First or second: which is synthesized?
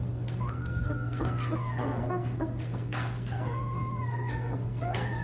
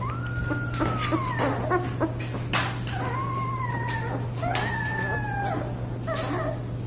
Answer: first